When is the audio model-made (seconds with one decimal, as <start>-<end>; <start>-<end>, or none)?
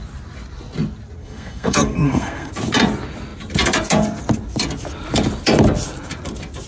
1.2-2.5